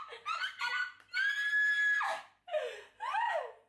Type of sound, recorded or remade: recorded